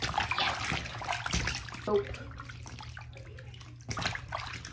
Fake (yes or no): no